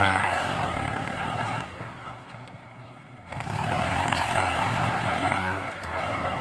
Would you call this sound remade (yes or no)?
yes